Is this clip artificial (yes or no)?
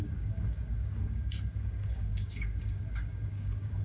yes